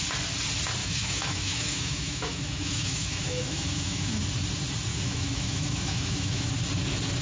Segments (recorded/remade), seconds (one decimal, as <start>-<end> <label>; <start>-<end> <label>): 0.0-0.8 recorded; 0.8-4.2 remade; 4.2-4.9 recorded; 4.9-6.5 remade; 6.5-7.2 recorded